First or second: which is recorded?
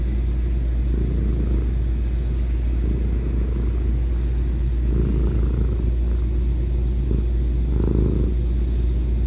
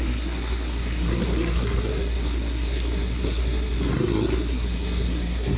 first